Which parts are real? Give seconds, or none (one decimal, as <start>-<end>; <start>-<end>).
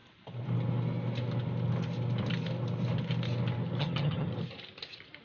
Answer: 0.0-3.8; 4.3-5.2